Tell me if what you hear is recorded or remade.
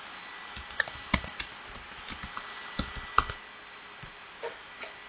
recorded